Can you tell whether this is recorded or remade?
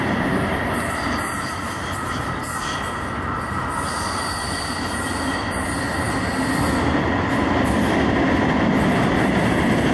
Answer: recorded